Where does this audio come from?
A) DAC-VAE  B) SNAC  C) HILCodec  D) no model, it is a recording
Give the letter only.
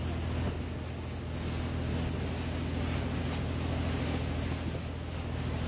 D